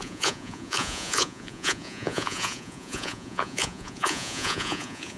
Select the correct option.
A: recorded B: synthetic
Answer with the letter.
B